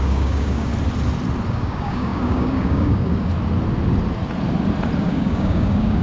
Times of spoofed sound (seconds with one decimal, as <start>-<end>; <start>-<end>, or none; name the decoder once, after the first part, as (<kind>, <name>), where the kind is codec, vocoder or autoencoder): 0.0-0.7 (codec, DAC); 1.5-3.3; 5.0-6.0